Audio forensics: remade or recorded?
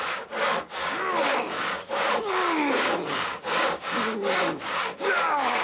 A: remade